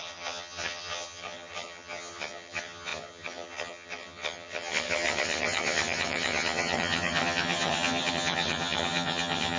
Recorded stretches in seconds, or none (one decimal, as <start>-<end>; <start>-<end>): none